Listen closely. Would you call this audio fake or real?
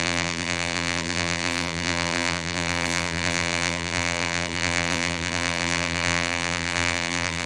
fake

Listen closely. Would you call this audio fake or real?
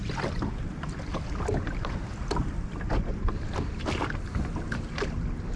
real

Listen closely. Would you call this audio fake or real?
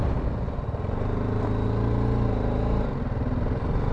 real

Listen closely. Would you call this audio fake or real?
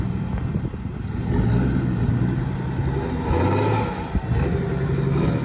real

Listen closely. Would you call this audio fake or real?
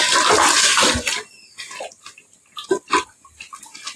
real